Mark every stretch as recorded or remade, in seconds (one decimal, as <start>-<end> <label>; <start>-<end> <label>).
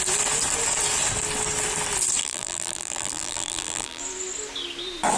0.0-2.2 recorded; 2.2-4.0 remade; 4.0-5.2 recorded